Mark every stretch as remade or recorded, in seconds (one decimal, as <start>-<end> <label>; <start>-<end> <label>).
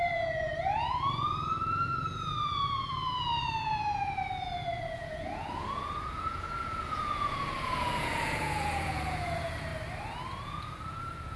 0.0-9.7 remade; 9.7-10.4 recorded; 10.4-11.4 remade